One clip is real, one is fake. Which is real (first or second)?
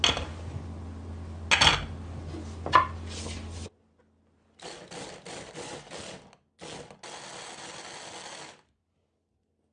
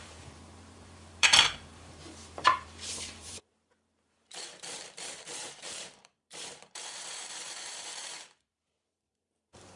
first